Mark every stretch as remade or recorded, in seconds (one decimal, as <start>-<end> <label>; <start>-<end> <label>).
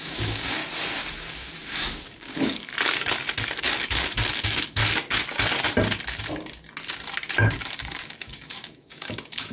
0.0-0.6 remade; 0.6-1.2 recorded; 1.2-2.7 remade; 2.7-3.6 recorded; 3.6-4.8 remade; 4.8-7.4 recorded; 7.4-9.5 remade